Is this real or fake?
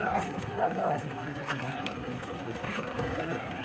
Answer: fake